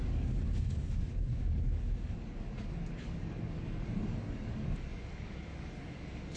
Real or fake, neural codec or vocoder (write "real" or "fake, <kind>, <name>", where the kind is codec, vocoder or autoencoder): fake, codec, DAC